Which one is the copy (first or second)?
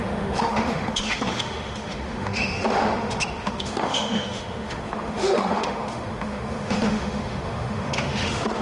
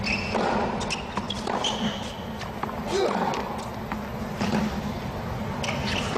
first